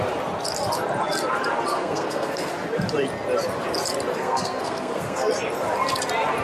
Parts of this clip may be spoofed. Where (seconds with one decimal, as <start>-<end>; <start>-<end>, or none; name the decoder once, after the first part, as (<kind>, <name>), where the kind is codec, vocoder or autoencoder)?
1.7-2.5 (codec, SNAC); 4.1-5.3